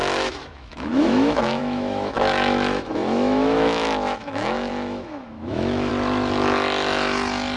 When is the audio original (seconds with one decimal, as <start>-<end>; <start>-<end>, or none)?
5.9-7.6